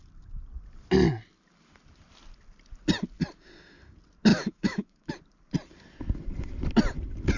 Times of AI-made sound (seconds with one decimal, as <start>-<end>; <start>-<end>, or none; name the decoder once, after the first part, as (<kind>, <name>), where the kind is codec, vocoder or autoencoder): 4.3-5.1 (autoencoder, DAC-VAE)